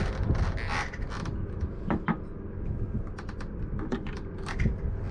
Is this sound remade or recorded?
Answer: recorded